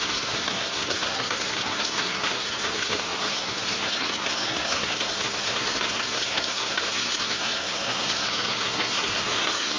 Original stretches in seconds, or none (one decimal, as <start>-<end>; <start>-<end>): none